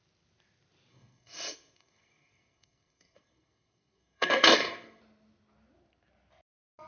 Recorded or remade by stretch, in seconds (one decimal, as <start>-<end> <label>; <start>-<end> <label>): 0.0-0.9 recorded; 0.9-5.0 remade; 5.0-6.9 recorded